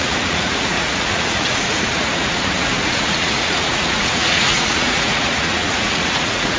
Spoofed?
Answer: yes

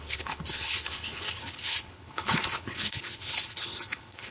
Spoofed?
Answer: yes